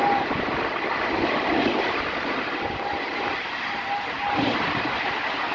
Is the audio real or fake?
fake